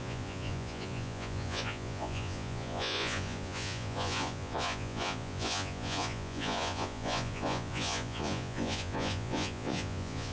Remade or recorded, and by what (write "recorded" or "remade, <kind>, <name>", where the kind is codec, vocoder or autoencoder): remade, vocoder, Vocos